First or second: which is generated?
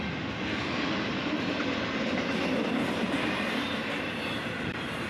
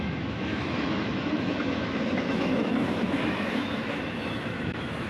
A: second